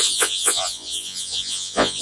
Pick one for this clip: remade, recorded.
remade